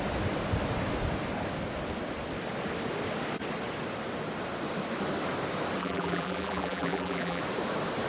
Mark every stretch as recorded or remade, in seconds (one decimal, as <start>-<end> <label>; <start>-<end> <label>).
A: 0.0-5.8 recorded; 5.8-7.4 remade; 7.4-8.1 recorded